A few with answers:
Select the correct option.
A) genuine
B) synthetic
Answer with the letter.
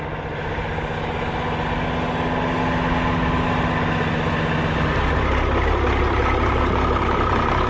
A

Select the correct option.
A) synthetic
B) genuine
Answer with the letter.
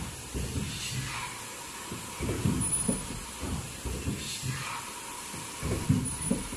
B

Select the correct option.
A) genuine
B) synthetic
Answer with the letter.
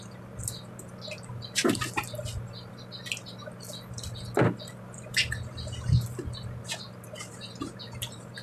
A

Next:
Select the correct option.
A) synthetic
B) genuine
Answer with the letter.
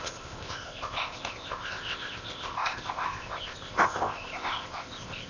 A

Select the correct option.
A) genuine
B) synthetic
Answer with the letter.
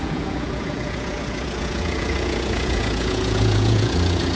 B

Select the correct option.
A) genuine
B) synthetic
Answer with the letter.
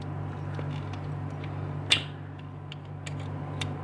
A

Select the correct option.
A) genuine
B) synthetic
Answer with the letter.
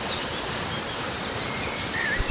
B